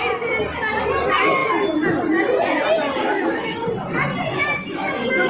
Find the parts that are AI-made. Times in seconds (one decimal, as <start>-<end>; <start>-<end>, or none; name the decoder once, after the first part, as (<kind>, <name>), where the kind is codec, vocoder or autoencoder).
3.0-3.6 (autoencoder, DAC-VAE); 4.3-5.3